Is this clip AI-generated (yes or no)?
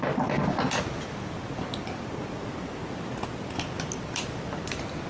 no